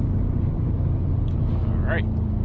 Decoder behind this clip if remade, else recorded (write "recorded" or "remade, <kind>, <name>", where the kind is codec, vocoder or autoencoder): recorded